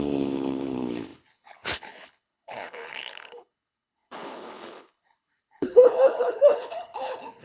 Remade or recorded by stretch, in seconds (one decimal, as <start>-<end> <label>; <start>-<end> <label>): 0.0-7.4 remade